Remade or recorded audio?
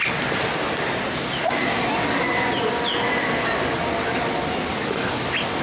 recorded